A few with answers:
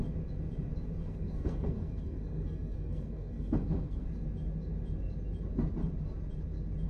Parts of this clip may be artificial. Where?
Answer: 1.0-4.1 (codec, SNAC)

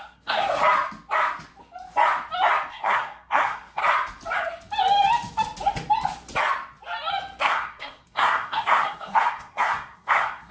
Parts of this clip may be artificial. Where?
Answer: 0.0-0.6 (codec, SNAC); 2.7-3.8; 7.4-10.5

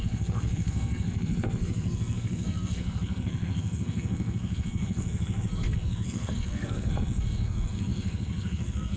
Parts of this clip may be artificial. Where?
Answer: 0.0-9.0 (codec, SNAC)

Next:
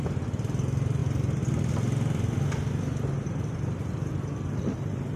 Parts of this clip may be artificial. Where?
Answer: none